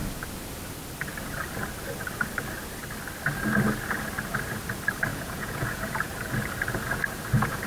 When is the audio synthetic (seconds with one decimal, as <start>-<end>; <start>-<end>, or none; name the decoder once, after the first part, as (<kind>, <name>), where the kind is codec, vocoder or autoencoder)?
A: 5.1-6.1 (vocoder, Vocos)